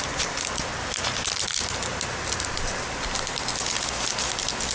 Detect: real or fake real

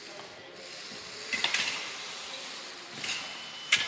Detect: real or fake real